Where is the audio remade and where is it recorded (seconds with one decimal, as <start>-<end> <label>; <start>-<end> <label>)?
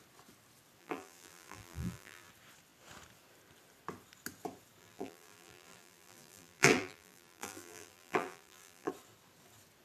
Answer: 0.0-0.8 recorded; 0.8-2.3 remade; 2.3-4.8 recorded; 4.8-8.9 remade; 8.9-9.8 recorded